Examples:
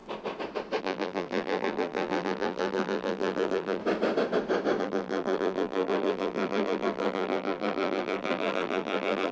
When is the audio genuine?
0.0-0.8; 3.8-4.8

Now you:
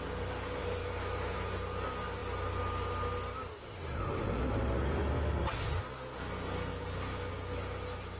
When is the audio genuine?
0.0-0.8; 1.5-8.2